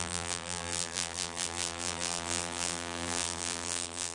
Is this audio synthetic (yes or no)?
yes